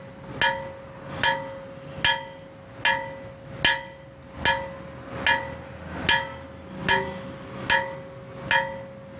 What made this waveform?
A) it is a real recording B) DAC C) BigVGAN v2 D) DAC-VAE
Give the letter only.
A